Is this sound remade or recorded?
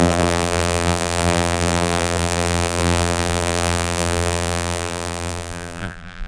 remade